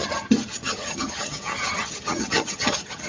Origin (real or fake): fake